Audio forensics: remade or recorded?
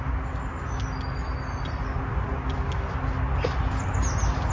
recorded